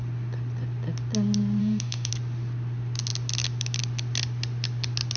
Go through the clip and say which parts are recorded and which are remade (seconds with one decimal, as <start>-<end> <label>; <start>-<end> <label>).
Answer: 0.0-1.6 recorded; 1.6-2.1 remade; 2.1-5.2 recorded